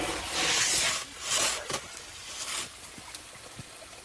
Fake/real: real